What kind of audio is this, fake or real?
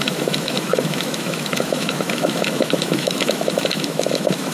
fake